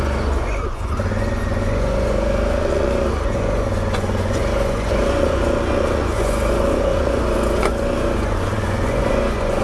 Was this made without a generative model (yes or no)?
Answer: no